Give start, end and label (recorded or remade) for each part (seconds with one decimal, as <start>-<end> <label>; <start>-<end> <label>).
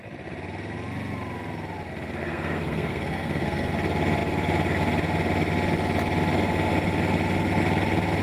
0.0-2.2 recorded; 2.2-3.7 remade; 3.7-8.2 recorded